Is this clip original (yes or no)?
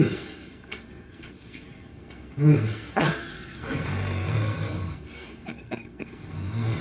no